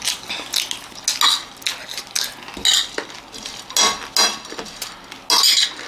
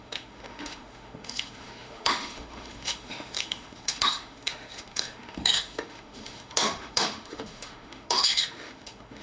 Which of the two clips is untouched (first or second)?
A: first